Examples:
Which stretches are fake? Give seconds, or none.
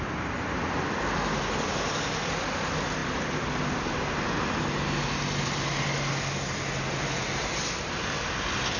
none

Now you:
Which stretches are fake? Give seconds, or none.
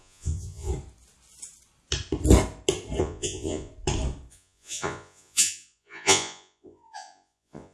0.0-0.7 (vocoder, Vocos); 3.0-3.7; 4.3-7.7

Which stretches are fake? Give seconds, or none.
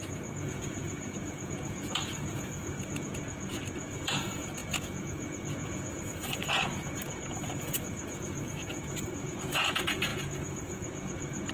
0.0-11.5 (vocoder, Vocos)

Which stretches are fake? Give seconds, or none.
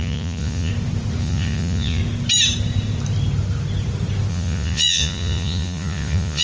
0.0-0.7 (vocoder, Vocos); 1.2-2.0; 4.3-6.4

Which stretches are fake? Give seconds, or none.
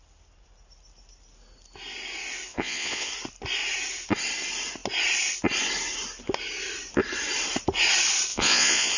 2.5-3.1 (vocoder, Vocos); 8.3-9.0